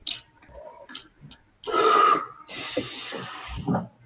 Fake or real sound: real